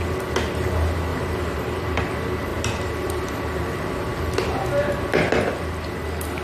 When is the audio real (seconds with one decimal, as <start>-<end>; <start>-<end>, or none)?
0.0-1.1; 2.0-2.5; 3.3-6.4